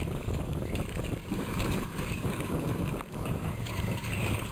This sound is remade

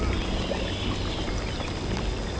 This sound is recorded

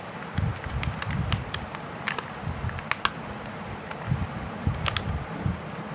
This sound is recorded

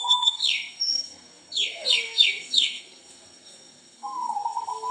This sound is remade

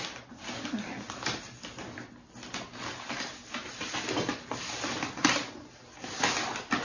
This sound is recorded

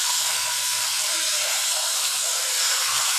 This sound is remade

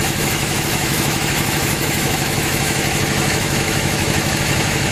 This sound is remade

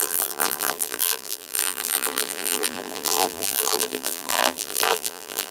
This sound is remade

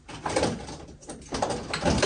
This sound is recorded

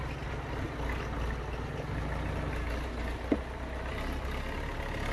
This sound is recorded